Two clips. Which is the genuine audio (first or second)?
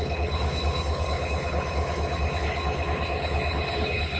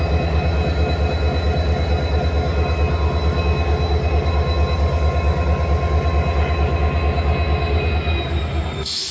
second